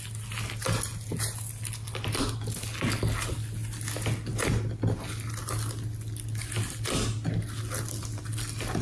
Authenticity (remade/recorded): recorded